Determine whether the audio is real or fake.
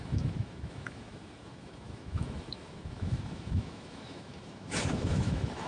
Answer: fake